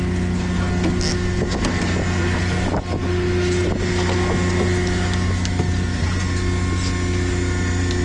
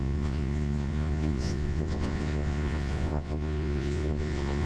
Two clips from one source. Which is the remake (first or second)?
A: second